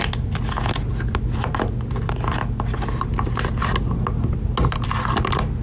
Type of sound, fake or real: real